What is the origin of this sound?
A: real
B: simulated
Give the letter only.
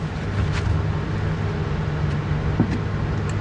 A